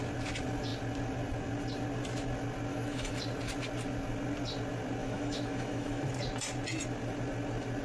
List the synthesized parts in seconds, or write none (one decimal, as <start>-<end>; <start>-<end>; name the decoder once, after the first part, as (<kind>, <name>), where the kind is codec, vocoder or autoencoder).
2.7-3.2 (autoencoder, DAC-VAE); 5.0-6.1